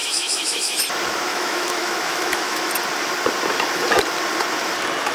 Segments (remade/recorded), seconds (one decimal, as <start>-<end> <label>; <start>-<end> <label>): 0.0-0.8 remade; 0.8-1.3 recorded; 1.3-2.7 remade; 2.7-5.1 recorded